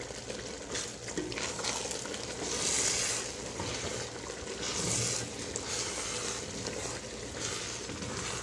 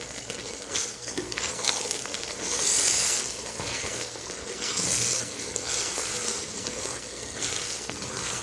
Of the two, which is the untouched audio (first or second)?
first